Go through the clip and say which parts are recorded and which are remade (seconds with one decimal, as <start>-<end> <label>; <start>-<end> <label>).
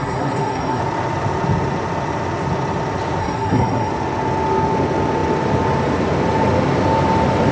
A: 0.0-0.8 remade; 0.8-3.2 recorded; 3.2-3.9 remade; 3.9-7.5 recorded